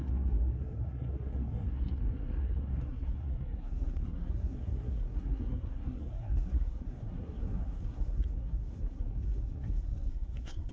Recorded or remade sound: remade